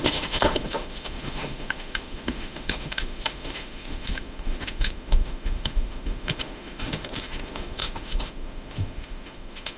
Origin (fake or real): fake